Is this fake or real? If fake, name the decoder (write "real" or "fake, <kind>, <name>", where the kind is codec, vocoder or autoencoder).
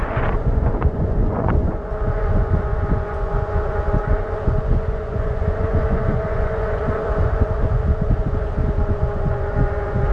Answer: fake, vocoder, Vocos